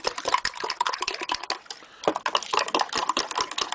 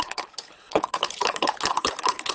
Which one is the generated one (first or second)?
second